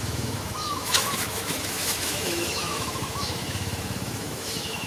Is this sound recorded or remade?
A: remade